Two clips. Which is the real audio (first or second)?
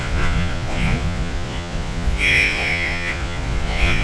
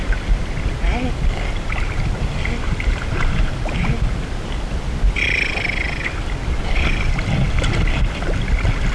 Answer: second